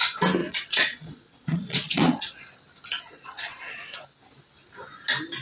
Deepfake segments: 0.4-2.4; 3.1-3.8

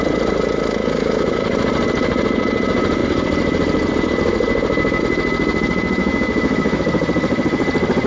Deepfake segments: 0.8-1.4; 6.0-6.8

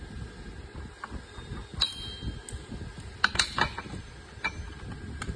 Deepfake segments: none

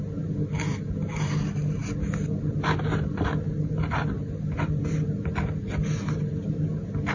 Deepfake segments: none

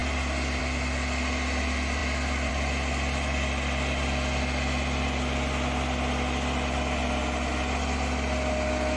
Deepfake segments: none

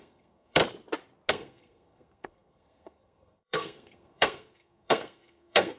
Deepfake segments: 0.0-0.6; 1.3-5.8

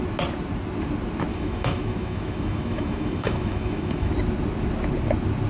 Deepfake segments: 1.3-4.1

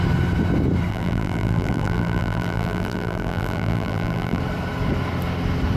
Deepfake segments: 0.9-4.4